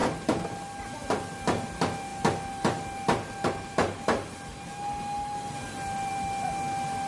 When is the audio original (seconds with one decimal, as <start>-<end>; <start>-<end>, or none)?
0.0-7.1